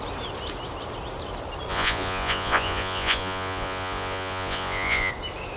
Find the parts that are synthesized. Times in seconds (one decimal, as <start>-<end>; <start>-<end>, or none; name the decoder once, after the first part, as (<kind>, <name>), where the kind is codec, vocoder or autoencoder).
1.7-5.1 (vocoder, Vocos)